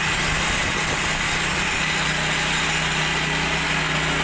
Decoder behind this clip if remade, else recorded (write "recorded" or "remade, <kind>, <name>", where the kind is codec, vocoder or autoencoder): recorded